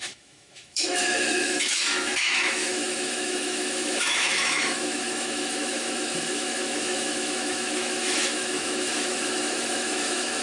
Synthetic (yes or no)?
yes